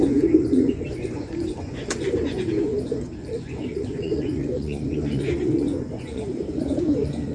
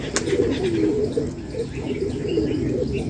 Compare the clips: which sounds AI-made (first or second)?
first